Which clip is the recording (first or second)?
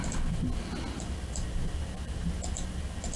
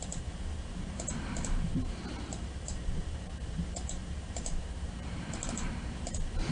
first